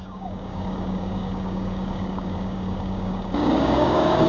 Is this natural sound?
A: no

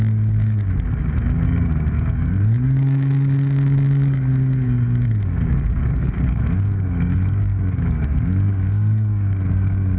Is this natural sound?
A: no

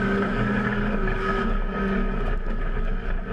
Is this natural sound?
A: no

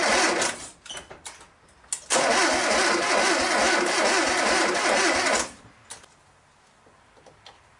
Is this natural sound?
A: yes